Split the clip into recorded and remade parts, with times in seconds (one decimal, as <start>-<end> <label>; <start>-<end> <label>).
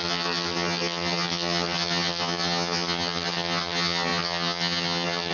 0.0-5.3 remade